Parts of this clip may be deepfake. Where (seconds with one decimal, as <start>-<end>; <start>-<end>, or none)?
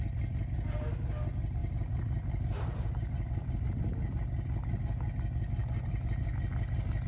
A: 1.6-3.6; 5.6-6.2